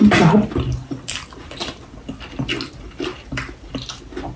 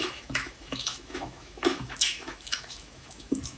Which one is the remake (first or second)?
second